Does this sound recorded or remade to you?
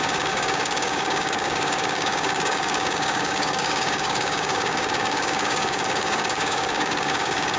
remade